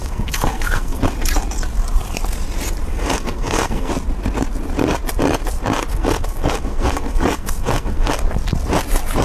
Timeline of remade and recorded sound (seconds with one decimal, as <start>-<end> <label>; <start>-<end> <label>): 0.0-1.0 remade; 1.0-2.9 recorded; 2.9-3.9 remade; 3.9-5.9 recorded; 5.9-8.1 remade; 8.1-9.2 recorded